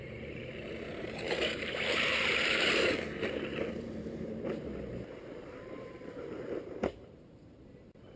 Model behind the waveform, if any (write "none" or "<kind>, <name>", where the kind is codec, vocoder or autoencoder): vocoder, BigVGAN v2